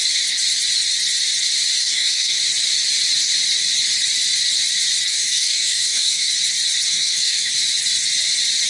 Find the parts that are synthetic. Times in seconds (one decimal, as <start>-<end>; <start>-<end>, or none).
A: 1.8-2.4; 5.1-6.3; 6.9-7.5